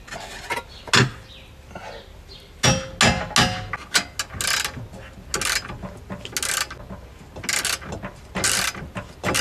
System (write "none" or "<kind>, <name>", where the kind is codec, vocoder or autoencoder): none